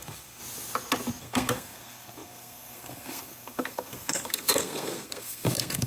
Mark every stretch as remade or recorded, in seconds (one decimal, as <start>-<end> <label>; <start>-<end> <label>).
0.0-0.4 remade; 0.4-1.2 recorded; 1.2-5.9 remade